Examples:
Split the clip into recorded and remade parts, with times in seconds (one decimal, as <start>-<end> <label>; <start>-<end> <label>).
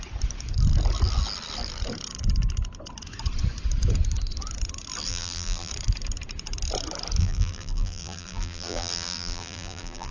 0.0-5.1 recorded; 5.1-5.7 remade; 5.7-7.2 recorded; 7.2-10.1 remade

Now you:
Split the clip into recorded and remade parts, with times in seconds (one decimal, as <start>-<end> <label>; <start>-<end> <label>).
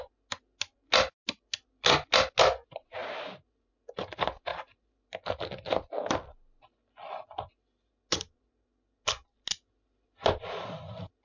0.0-3.0 recorded; 3.0-3.7 remade; 3.7-11.2 recorded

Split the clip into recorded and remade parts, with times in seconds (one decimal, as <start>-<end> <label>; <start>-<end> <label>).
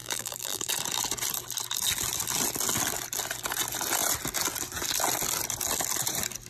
0.0-0.7 remade; 0.7-6.5 recorded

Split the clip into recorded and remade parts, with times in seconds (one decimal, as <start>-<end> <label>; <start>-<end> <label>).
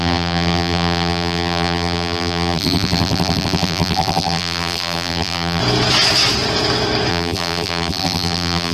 0.0-5.6 remade; 5.6-7.1 recorded; 7.1-8.7 remade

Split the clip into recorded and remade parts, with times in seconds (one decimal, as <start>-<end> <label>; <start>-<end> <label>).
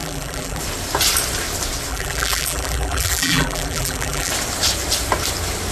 0.0-0.6 remade; 0.6-1.9 recorded; 1.9-4.3 remade; 4.3-5.7 recorded